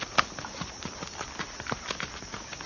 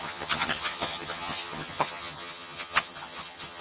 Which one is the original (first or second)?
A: first